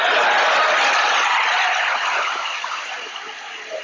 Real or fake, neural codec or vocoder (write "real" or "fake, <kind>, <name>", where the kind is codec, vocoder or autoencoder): real